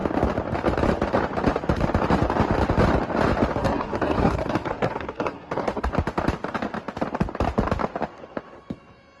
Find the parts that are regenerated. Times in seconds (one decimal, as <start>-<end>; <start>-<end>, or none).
3.6-5.9